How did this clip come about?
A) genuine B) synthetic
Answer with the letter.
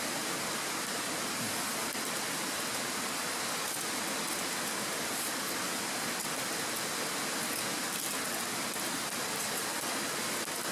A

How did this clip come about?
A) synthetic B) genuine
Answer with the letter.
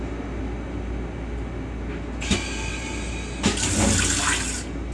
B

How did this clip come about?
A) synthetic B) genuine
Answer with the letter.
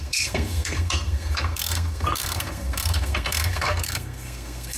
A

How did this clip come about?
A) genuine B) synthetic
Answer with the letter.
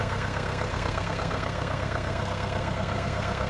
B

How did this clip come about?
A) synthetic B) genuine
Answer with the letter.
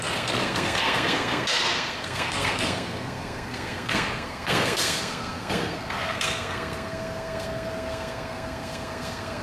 A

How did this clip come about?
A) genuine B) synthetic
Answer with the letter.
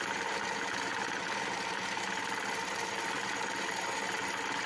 A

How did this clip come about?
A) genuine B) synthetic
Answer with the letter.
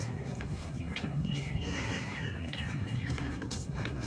B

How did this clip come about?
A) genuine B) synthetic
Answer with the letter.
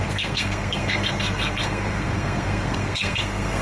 B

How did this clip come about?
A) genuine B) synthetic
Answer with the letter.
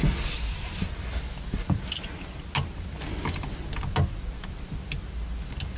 A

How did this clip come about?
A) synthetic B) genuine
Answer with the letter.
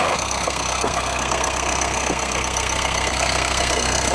A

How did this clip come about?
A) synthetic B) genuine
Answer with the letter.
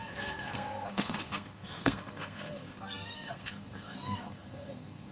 A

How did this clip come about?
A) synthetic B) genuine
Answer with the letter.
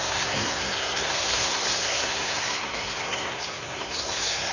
A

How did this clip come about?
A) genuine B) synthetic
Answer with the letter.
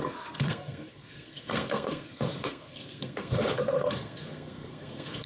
B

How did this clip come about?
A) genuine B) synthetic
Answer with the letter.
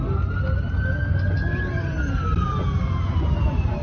A